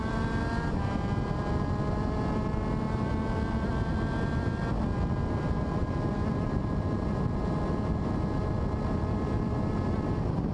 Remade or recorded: recorded